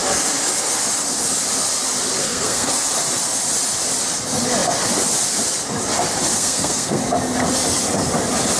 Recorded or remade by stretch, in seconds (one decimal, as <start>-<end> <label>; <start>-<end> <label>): 0.0-2.2 recorded; 2.2-2.7 remade; 2.7-6.3 recorded; 6.3-7.0 remade; 7.0-8.6 recorded